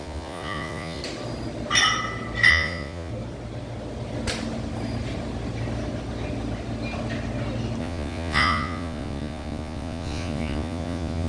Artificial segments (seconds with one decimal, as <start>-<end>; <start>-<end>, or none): 0.0-1.0; 2.5-3.1; 7.8-11.3